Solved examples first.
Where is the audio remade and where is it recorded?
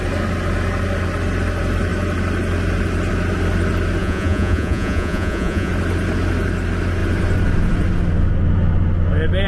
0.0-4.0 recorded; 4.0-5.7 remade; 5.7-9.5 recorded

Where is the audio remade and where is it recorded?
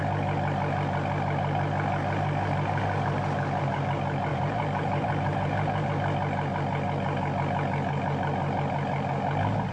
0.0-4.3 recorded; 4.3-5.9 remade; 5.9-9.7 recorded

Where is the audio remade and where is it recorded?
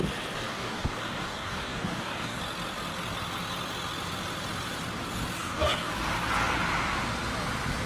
0.0-0.5 recorded; 0.5-2.4 remade; 2.4-5.4 recorded; 5.4-5.9 remade; 5.9-7.9 recorded